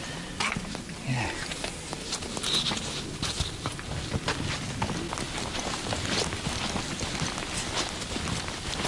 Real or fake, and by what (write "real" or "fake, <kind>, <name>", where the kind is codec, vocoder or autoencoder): real